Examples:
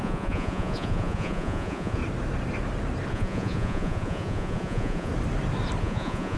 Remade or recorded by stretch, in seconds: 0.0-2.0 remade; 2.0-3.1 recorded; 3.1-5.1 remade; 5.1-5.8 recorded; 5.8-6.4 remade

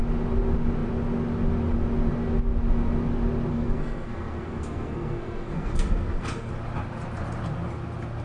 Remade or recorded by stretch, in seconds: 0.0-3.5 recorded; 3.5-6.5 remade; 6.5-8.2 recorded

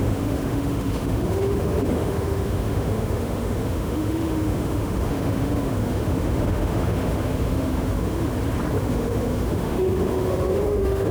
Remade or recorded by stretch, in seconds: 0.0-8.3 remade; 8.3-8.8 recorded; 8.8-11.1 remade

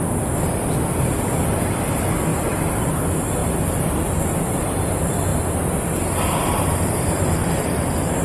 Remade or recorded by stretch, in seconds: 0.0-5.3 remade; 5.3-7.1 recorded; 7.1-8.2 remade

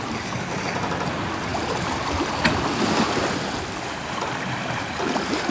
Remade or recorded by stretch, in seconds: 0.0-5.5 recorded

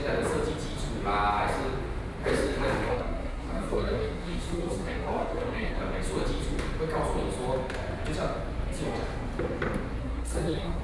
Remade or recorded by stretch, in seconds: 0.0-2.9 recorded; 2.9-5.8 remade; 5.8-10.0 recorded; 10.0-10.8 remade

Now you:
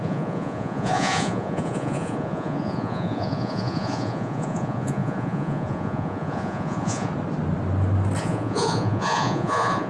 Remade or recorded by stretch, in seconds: 0.0-7.1 remade; 7.1-8.2 recorded; 8.2-9.9 remade